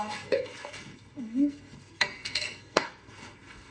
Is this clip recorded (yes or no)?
no